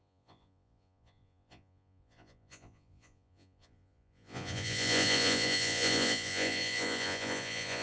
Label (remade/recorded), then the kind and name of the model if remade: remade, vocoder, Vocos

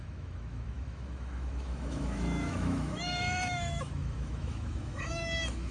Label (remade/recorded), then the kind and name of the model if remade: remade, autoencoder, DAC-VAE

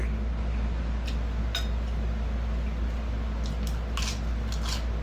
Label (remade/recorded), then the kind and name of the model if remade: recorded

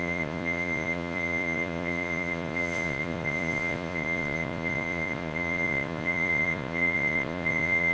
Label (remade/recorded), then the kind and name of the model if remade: remade, vocoder, Vocos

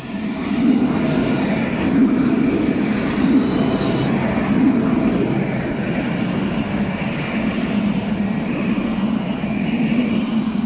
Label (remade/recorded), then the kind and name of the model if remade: recorded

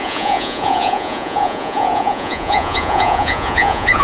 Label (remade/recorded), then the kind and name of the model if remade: remade, vocoder, Vocos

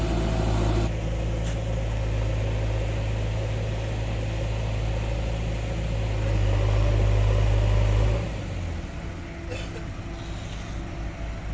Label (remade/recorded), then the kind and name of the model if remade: recorded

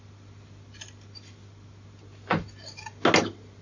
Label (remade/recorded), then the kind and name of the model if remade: recorded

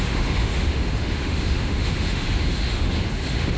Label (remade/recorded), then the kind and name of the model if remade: remade, autoencoder, DAC-VAE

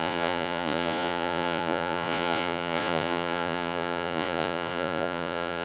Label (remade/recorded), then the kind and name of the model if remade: remade, vocoder, Vocos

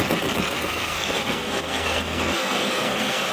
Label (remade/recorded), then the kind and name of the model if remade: remade, codec, SNAC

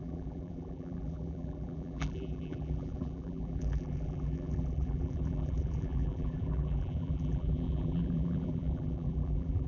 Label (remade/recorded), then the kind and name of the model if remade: remade, vocoder, BigVGAN v2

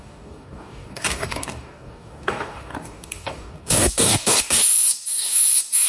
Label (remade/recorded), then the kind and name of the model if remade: remade, codec, DAC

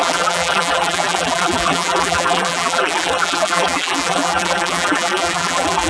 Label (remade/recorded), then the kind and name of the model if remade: remade, vocoder, BigVGAN v2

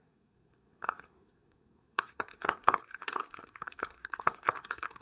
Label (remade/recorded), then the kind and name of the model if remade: remade, codec, SNAC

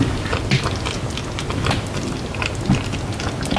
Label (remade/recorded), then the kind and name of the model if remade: recorded